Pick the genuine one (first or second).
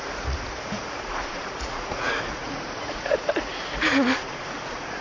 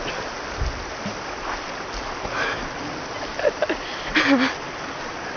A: second